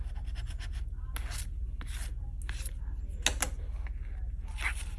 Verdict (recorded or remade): recorded